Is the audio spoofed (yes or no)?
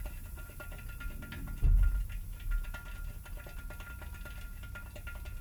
no